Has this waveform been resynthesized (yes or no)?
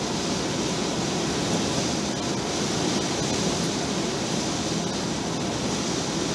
no